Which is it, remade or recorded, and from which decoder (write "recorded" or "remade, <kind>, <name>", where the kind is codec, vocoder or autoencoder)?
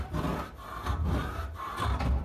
recorded